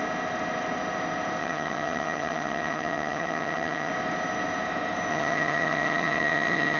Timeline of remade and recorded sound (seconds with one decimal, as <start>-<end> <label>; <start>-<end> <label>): 0.0-1.4 recorded; 1.4-3.9 remade; 3.9-5.1 recorded; 5.1-6.8 remade